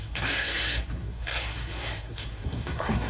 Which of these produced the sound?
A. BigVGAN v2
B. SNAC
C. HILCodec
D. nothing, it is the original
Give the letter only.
B